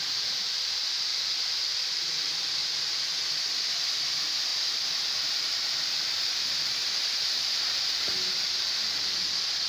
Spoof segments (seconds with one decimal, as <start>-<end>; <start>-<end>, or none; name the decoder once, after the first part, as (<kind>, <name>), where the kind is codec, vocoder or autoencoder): 0.0-2.6 (vocoder, BigVGAN v2); 4.1-9.7

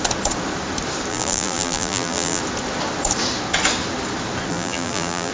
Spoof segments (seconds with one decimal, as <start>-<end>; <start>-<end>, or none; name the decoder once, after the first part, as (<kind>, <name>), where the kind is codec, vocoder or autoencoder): 1.1-2.4 (vocoder, BigVGAN v2); 4.5-5.3

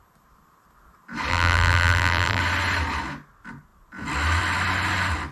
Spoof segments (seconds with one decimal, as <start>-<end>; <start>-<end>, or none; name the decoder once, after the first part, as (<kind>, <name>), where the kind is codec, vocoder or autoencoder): 1.3-2.4 (vocoder, BigVGAN v2)